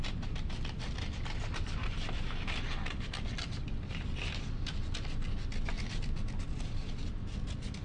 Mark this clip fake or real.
real